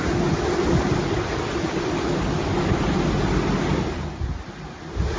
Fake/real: real